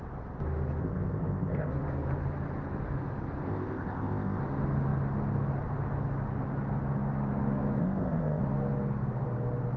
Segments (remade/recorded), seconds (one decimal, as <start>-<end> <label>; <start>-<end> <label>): 0.0-0.8 recorded; 0.8-1.7 remade; 1.7-3.5 recorded; 3.5-4.4 remade; 4.4-7.8 recorded; 7.8-8.4 remade; 8.4-9.8 recorded